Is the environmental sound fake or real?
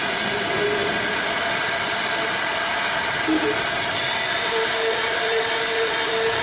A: real